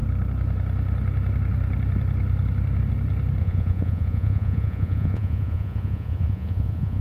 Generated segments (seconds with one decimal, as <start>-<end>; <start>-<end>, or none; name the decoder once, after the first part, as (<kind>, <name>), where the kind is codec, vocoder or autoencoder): 3.4-7.0 (vocoder, Vocos)